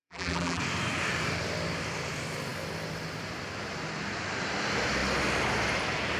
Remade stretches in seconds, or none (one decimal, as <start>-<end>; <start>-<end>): 0.0-0.6